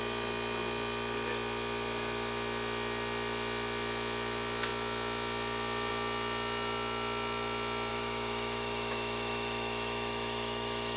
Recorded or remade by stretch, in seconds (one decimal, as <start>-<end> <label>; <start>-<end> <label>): 0.0-7.9 recorded; 7.9-11.0 remade